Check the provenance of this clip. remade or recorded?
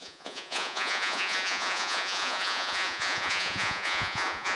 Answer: remade